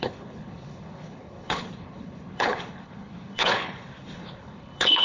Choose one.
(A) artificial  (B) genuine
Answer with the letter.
A